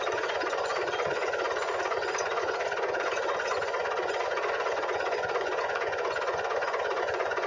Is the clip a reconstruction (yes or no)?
yes